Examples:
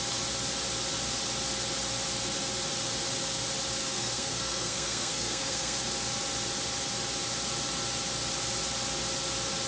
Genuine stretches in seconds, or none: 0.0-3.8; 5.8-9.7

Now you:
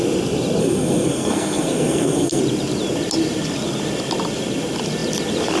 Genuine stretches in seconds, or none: 0.0-0.6; 2.4-5.6

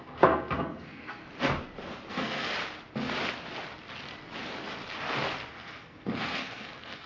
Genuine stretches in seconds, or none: 1.2-2.1; 2.5-5.5

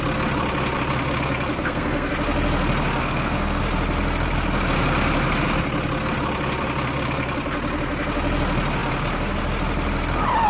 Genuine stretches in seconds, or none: 0.0-1.5; 2.1-3.0; 3.6-10.5

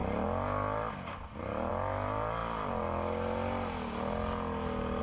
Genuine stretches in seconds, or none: 0.0-5.0

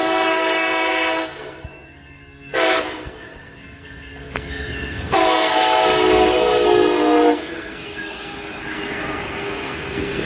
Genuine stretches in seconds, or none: none

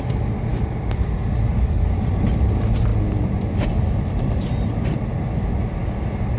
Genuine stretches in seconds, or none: 0.0-6.4

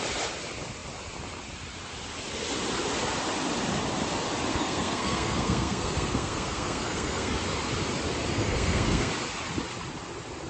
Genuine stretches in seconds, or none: 0.0-4.5; 7.4-8.3; 9.1-10.5